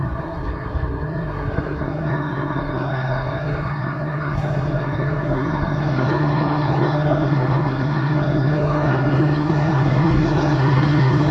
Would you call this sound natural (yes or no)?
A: no